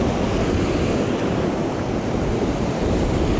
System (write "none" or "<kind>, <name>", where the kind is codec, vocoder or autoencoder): none